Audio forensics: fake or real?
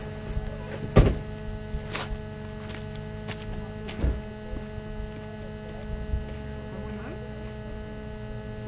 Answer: real